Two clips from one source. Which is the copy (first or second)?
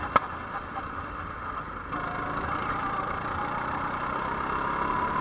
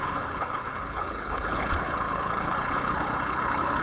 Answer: second